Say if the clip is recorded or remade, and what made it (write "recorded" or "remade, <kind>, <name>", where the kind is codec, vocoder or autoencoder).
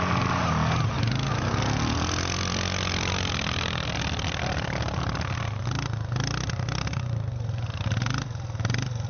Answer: recorded